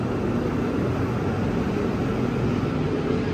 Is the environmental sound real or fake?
real